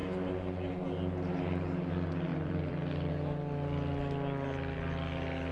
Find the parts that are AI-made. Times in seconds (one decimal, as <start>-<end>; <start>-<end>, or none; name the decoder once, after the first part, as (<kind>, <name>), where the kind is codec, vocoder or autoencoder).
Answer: 2.3-3.1 (vocoder, BigVGAN v2)